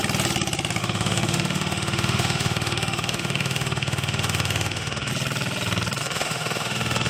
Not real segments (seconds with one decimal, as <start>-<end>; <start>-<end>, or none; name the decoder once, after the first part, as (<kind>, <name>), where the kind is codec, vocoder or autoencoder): 0.8-5.1 (autoencoder, DAC-VAE); 6.0-7.1